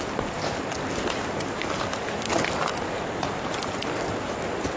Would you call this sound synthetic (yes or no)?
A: no